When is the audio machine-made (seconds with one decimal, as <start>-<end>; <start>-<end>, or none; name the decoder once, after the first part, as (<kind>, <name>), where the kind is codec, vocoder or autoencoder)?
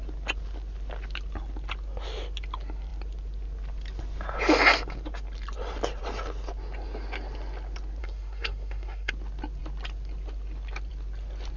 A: 8.0-9.1 (codec, SNAC)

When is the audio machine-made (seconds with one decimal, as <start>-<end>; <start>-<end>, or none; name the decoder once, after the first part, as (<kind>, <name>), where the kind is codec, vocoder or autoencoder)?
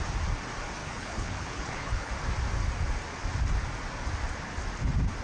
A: 0.8-2.1 (codec, HILCodec)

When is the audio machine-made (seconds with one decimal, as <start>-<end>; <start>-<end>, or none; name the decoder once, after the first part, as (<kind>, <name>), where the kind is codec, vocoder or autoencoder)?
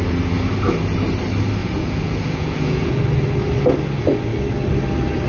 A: 1.6-3.0 (vocoder, Vocos)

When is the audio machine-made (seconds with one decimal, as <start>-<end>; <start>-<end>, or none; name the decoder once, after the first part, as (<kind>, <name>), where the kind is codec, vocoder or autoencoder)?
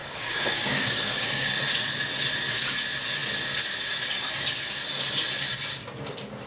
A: 0.0-1.5 (codec, DAC)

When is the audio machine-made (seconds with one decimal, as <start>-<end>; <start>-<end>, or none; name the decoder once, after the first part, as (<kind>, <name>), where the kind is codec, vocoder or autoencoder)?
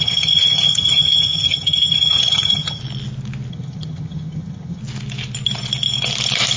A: 0.0-2.8 (vocoder, HiFi-GAN); 3.5-4.8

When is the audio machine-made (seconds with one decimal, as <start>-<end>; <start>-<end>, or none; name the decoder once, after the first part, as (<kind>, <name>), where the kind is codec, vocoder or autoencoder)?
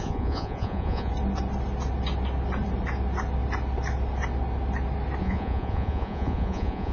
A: 0.0-1.1 (vocoder, Vocos); 5.2-6.9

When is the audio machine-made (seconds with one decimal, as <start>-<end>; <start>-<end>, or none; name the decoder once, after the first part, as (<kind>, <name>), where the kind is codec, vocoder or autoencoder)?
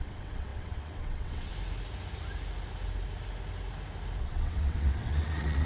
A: 0.0-1.5 (vocoder, WaveNeXt); 4.2-5.7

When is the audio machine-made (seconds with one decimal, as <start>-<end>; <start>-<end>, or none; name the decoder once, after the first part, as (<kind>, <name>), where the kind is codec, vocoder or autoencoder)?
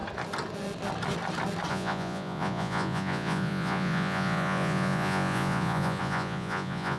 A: 1.7-7.0 (vocoder, Vocos)